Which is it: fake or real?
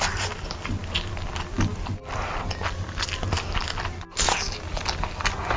real